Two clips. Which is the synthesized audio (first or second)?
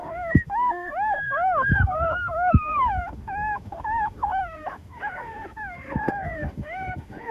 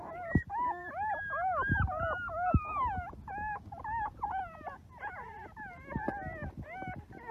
first